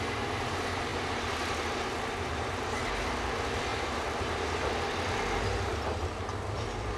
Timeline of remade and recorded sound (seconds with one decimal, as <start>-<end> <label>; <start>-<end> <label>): 0.0-3.7 recorded; 3.7-4.7 remade; 4.7-5.7 recorded; 5.7-7.0 remade